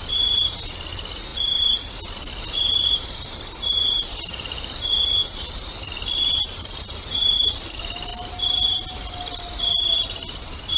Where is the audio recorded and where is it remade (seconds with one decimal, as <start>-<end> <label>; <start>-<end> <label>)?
0.0-1.3 remade; 1.3-2.5 recorded; 2.5-8.1 remade; 8.1-10.8 recorded